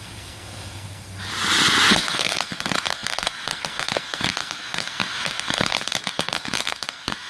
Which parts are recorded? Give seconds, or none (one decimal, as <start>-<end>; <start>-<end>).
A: 1.3-1.9